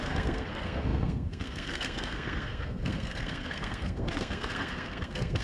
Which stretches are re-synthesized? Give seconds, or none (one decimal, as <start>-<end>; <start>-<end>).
0.0-5.4